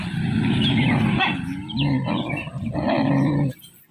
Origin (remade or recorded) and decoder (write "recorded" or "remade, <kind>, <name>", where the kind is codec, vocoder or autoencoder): recorded